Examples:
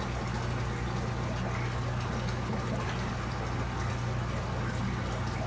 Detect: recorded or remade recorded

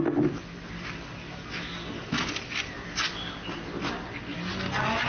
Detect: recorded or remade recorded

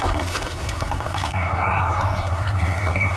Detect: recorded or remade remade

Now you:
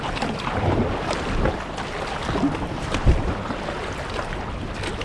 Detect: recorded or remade recorded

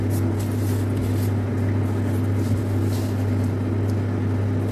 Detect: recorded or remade recorded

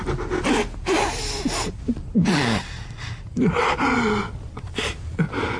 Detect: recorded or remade recorded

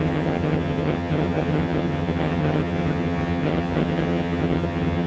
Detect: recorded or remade remade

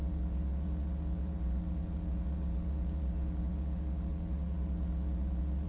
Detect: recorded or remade remade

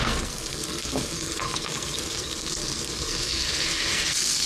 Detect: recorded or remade remade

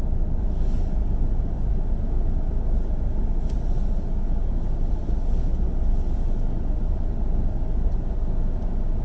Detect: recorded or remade recorded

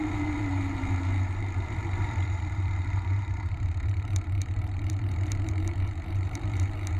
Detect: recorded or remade remade